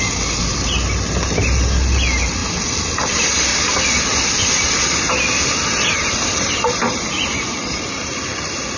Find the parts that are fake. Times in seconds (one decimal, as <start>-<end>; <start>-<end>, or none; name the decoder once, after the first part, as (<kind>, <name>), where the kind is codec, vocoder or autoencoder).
none